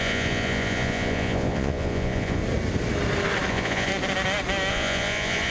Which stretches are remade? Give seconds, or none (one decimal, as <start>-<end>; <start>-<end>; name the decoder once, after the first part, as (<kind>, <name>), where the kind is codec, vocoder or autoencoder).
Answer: 0.0-2.4 (vocoder, Vocos); 3.5-3.9; 4.7-5.5